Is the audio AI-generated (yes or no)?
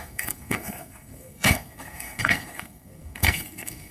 yes